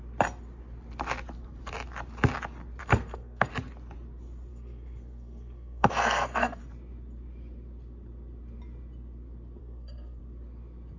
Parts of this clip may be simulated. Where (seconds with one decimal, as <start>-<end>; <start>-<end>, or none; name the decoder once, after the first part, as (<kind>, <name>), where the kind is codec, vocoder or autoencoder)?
2.8-3.5 (codec, SNAC); 4.5-6.6; 9.6-10.2